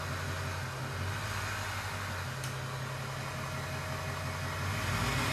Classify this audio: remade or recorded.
recorded